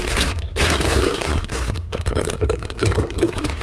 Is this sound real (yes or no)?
no